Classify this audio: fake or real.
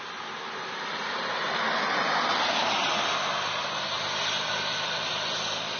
real